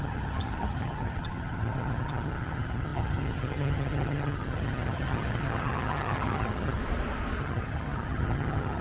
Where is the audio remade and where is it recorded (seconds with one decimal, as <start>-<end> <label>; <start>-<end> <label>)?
0.0-6.8 remade; 6.8-7.4 recorded; 7.4-8.8 remade